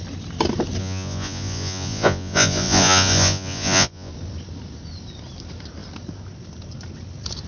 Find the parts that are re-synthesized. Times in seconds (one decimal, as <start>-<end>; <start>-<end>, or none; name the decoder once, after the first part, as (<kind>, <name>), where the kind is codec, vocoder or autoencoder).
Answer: 0.8-4.1 (vocoder, Vocos)